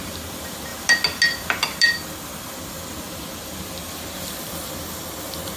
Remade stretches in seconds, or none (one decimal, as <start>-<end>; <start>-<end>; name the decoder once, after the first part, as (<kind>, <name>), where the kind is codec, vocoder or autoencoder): none